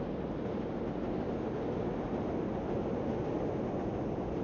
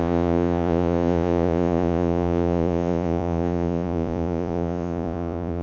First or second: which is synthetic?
second